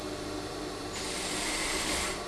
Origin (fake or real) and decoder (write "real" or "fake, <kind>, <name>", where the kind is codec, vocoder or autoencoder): fake, vocoder, BigVGAN v2